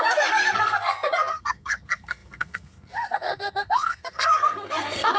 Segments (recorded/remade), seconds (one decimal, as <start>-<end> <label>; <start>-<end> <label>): 0.0-5.2 remade